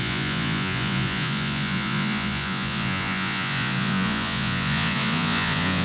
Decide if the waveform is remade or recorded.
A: remade